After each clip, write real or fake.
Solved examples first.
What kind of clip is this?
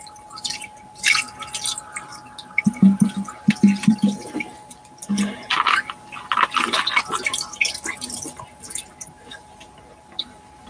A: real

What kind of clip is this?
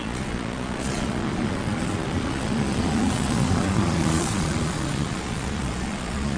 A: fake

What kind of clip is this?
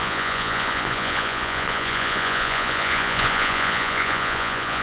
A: fake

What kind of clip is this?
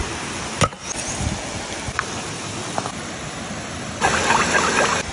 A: real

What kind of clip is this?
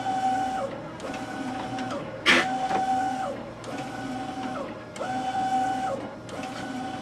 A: real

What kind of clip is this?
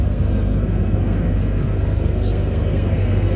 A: fake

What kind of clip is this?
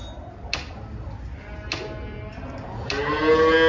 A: real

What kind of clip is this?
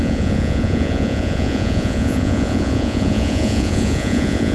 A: fake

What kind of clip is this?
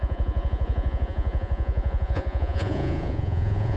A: fake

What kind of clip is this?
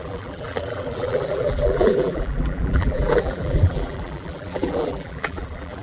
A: fake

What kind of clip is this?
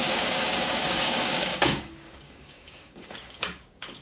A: fake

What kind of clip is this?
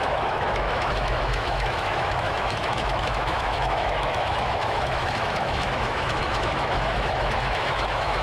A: fake